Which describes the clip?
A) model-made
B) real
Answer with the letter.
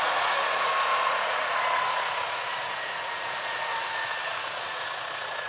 A